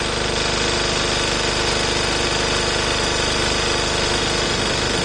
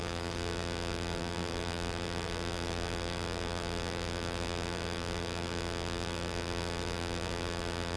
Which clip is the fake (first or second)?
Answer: second